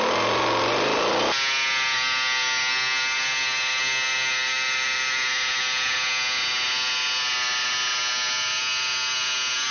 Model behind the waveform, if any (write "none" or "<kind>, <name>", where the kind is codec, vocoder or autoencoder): none